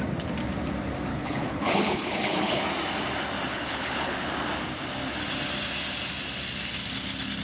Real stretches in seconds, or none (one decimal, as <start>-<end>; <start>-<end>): 0.0-1.1; 2.6-3.5; 4.3-7.4